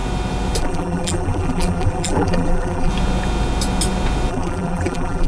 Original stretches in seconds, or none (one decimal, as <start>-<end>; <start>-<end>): 0.0-0.6; 2.9-4.3